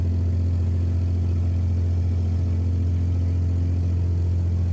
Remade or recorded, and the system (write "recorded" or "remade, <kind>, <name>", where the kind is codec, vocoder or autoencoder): recorded